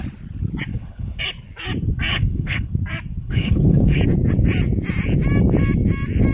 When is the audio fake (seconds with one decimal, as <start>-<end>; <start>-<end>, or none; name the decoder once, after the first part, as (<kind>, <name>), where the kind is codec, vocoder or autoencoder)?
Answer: 0.7-1.2 (codec, HILCodec); 2.1-2.7; 3.2-4.0